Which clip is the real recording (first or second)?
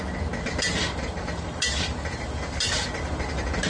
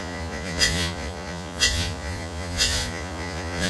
first